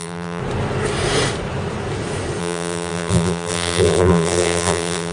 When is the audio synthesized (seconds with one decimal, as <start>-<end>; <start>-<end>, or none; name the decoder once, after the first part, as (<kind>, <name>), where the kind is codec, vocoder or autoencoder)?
0.0-0.4 (vocoder, BigVGAN v2); 2.4-5.1